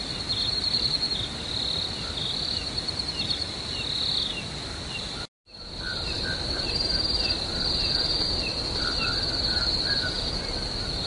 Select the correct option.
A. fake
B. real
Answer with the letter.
B